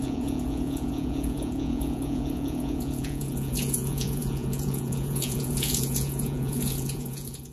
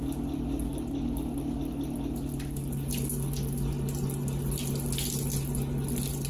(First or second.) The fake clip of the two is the first